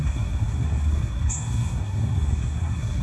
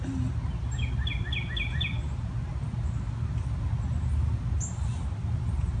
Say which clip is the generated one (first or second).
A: first